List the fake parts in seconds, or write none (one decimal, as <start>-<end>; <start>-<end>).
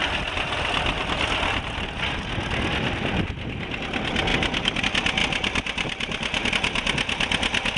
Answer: 0.0-1.6; 4.3-4.8; 5.2-6.5